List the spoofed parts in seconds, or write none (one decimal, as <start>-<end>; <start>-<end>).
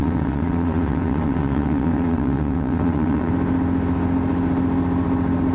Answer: 0.0-3.3